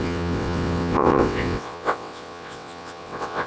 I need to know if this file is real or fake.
fake